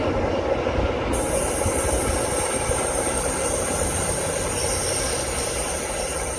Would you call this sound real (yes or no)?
yes